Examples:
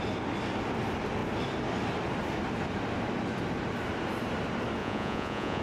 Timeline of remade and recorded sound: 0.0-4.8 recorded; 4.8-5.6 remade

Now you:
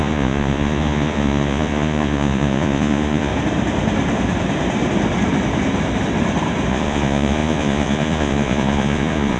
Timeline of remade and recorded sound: 0.0-3.3 remade; 3.3-6.7 recorded; 6.7-9.4 remade

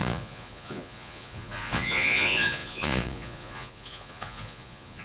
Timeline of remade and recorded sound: 0.0-5.0 remade

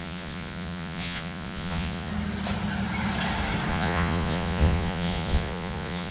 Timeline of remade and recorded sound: 0.0-2.1 remade; 2.1-3.7 recorded; 3.7-6.1 remade

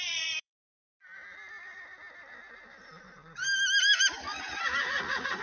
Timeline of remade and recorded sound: 0.0-0.9 remade; 0.9-4.1 recorded; 4.1-5.4 remade

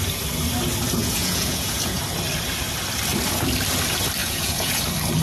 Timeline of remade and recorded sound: 0.0-1.0 recorded; 1.0-2.0 remade; 2.0-4.2 recorded; 4.2-4.8 remade; 4.8-5.2 recorded